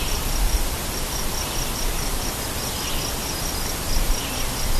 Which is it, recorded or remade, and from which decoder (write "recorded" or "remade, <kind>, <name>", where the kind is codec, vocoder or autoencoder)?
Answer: recorded